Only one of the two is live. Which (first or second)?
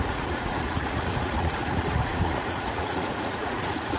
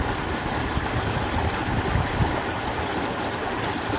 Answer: second